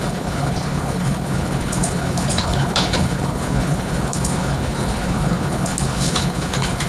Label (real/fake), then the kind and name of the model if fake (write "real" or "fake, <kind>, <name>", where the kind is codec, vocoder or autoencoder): fake, codec, HILCodec